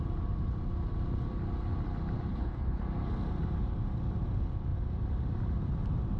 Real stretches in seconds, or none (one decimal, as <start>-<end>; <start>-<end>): 0.0-2.3; 2.8-6.2